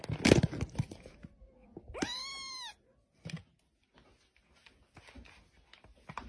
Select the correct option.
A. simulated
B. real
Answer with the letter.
B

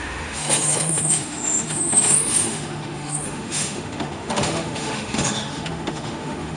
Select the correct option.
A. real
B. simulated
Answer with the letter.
B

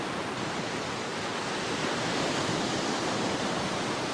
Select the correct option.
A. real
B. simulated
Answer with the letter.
A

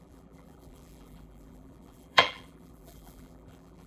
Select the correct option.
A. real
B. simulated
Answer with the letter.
B